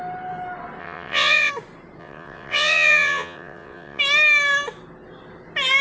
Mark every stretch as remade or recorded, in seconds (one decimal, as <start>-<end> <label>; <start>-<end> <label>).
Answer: 0.0-0.8 recorded; 0.8-1.5 remade; 1.5-2.0 recorded; 2.0-4.0 remade; 4.0-5.8 recorded